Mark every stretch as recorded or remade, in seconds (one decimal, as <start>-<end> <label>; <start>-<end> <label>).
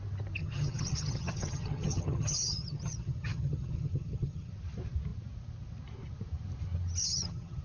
0.0-0.4 recorded; 0.4-4.5 remade; 4.5-7.0 recorded; 7.0-7.6 remade